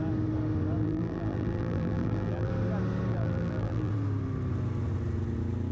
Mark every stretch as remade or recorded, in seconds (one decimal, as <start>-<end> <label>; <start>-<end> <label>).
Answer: 0.0-0.8 recorded; 0.8-2.5 remade; 2.5-3.1 recorded; 3.1-3.9 remade; 3.9-5.7 recorded